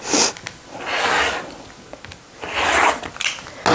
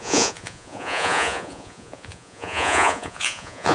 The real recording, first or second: first